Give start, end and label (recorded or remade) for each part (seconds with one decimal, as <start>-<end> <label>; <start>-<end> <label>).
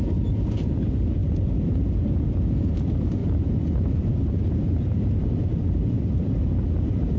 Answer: 0.0-7.2 remade